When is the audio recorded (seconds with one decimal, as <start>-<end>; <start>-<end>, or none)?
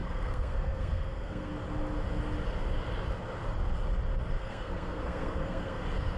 1.5-4.4; 5.8-6.2